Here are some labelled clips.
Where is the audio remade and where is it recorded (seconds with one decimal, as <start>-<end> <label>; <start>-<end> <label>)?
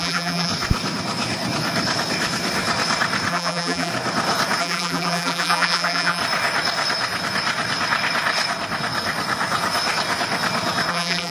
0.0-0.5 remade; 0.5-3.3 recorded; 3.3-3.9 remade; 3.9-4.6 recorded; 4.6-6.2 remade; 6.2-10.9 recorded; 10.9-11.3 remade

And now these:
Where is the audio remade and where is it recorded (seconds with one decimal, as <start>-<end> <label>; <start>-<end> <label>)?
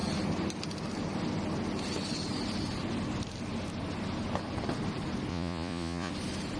0.0-5.3 recorded; 5.3-6.1 remade; 6.1-6.6 recorded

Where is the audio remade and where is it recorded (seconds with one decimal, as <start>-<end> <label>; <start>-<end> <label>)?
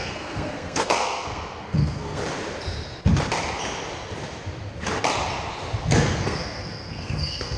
0.0-2.2 remade; 2.2-5.8 recorded; 5.8-7.6 remade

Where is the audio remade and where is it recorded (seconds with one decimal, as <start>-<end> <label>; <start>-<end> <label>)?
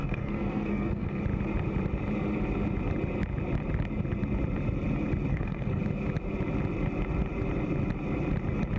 0.0-1.2 remade; 1.2-5.3 recorded; 5.3-5.8 remade; 5.8-8.8 recorded